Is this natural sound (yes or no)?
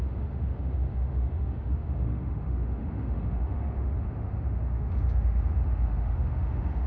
no